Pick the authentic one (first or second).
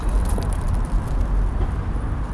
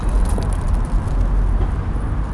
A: second